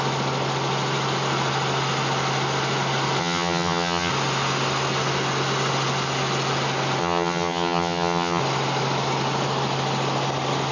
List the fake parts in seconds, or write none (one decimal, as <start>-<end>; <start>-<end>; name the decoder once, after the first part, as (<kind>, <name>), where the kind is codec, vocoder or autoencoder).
3.2-4.1 (vocoder, HiFi-GAN); 7.0-8.4